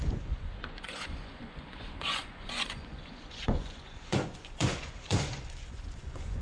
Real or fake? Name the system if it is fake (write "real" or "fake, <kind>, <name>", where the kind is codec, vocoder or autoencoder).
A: fake, vocoder, Vocos